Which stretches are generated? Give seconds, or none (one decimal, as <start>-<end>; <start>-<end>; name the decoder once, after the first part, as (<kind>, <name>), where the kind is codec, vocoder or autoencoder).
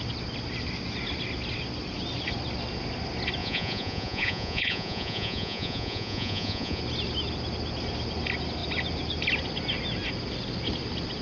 3.4-6.8 (vocoder, Vocos)